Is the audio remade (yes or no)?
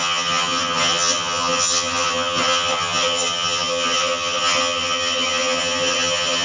yes